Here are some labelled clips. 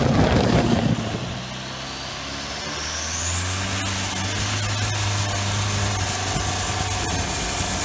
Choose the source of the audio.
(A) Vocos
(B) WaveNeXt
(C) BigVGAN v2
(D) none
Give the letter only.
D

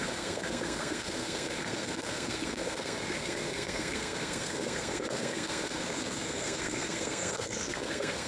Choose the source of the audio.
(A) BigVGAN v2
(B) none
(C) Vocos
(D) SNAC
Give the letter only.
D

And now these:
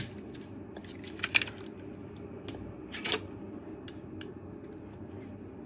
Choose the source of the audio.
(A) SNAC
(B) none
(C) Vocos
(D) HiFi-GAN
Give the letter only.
B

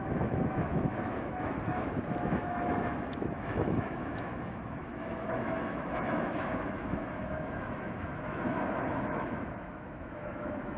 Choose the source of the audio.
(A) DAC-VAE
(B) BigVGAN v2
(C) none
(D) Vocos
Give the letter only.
A